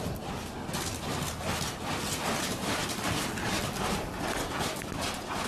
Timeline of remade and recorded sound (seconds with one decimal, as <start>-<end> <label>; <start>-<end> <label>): 0.0-5.5 recorded